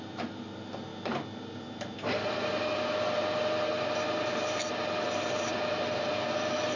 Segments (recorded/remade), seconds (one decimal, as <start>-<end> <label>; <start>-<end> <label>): 0.0-6.8 recorded